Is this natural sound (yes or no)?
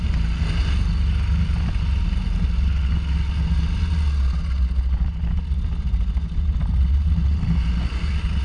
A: yes